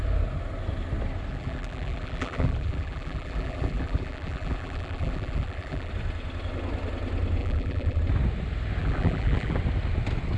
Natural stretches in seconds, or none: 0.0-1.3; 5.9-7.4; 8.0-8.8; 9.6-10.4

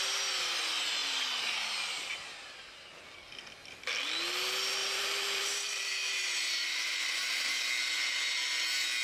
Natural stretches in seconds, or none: 0.0-4.8; 7.5-9.0

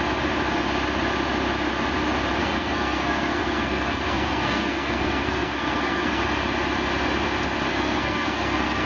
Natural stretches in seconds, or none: 0.0-2.4; 6.2-7.7

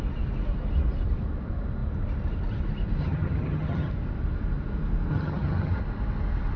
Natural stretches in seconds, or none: 0.0-3.0; 3.9-5.1; 5.8-6.6

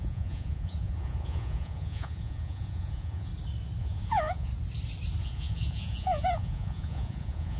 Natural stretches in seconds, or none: 3.3-3.8; 4.5-5.2